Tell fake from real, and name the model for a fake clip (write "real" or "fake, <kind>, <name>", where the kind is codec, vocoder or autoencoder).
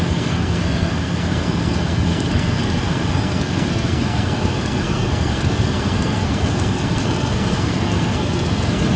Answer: fake, codec, SNAC